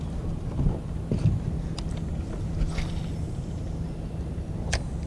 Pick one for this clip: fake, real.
real